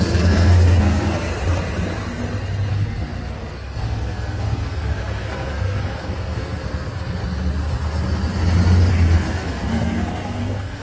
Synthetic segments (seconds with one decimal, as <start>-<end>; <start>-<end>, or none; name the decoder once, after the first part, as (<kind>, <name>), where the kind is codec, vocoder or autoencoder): 0.0-1.3 (codec, SNAC); 2.7-7.2; 8.9-10.8